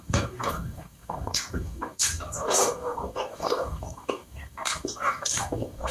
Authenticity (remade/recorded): remade